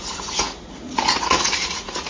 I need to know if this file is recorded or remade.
remade